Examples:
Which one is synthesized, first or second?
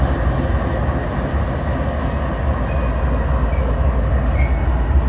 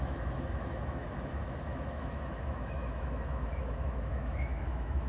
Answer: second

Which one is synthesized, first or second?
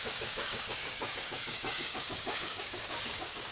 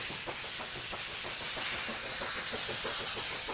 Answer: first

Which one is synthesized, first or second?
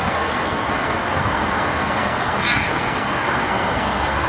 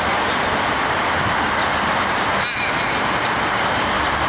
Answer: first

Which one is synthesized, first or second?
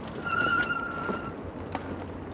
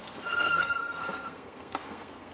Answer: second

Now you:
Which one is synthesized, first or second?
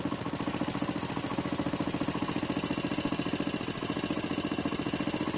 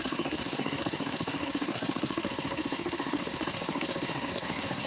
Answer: second